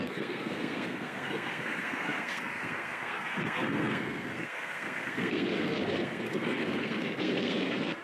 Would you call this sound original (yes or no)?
no